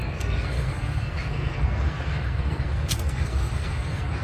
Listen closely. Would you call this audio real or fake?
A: fake